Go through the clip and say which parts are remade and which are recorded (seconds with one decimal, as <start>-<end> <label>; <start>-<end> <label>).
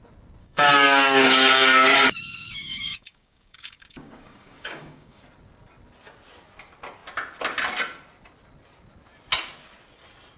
0.0-0.4 recorded; 0.4-5.2 remade; 5.2-10.4 recorded